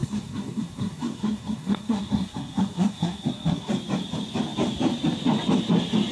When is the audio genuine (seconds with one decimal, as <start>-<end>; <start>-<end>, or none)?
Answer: 3.7-6.1